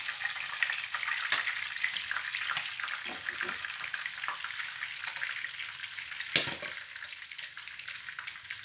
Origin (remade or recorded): recorded